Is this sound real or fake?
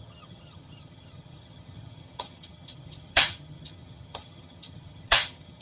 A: fake